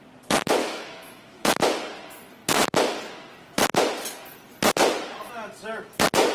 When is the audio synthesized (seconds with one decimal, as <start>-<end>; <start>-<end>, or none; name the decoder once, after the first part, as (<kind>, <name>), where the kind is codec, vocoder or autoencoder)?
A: 0.6-1.6 (autoencoder, DAC-VAE)